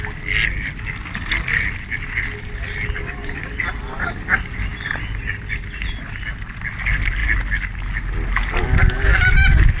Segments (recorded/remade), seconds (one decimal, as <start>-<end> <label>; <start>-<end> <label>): 0.0-3.2 recorded; 3.2-4.7 remade; 4.7-9.8 recorded